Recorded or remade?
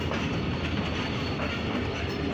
recorded